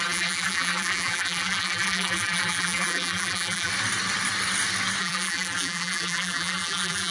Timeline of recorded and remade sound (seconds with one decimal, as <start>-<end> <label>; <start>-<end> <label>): 0.0-3.7 remade; 3.7-5.0 recorded; 5.0-7.1 remade